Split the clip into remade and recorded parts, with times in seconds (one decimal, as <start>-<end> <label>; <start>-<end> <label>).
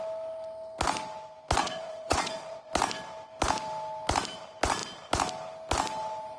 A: 0.0-1.6 recorded; 1.6-2.7 remade; 2.7-6.4 recorded